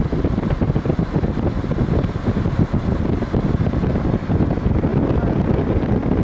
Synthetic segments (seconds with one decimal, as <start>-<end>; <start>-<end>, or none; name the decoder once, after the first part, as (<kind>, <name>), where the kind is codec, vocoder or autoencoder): none